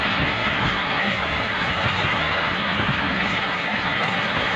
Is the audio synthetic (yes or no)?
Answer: yes